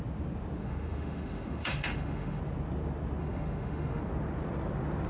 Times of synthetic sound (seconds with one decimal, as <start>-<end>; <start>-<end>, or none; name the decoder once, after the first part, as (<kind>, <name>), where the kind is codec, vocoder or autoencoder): 0.6-2.4 (autoencoder, DAC-VAE); 3.2-4.0